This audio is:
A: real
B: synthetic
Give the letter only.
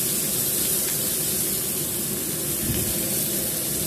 A